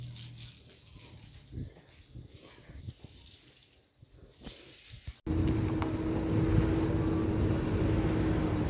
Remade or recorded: recorded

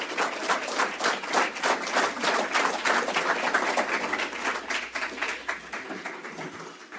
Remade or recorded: recorded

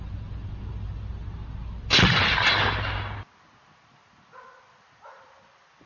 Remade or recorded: recorded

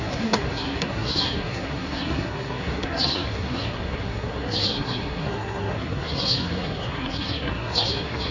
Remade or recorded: remade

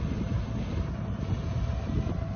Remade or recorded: remade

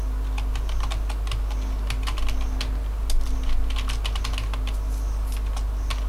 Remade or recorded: recorded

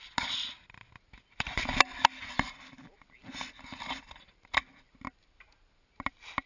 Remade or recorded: recorded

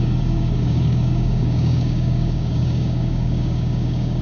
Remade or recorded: remade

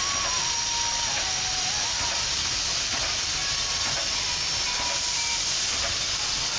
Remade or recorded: recorded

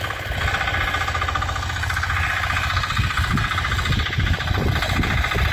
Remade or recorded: recorded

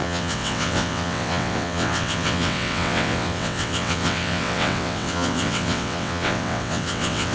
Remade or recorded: remade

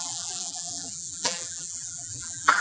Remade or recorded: remade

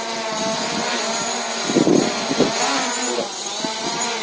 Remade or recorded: recorded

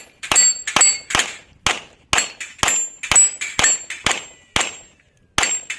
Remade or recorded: recorded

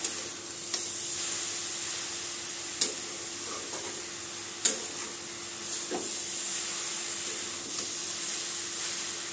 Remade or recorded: recorded